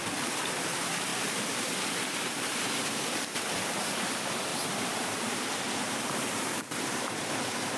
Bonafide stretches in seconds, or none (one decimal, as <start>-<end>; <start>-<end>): 0.0-1.1; 3.4-4.5; 7.3-7.8